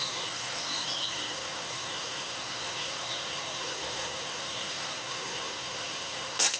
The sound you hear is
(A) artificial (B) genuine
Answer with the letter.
A